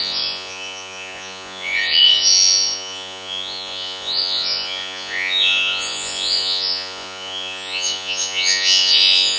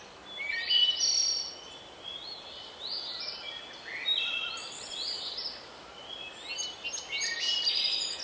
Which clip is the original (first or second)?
second